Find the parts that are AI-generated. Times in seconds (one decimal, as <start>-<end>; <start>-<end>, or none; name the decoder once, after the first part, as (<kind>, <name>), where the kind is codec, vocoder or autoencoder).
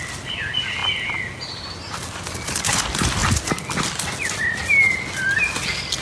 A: none